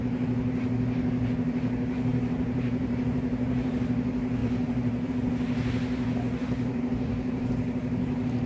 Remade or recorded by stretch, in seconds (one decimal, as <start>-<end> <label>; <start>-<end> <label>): 0.0-2.1 recorded; 2.1-3.7 remade; 3.7-4.4 recorded; 4.4-5.1 remade; 5.1-6.4 recorded; 6.4-7.4 remade; 7.4-8.5 recorded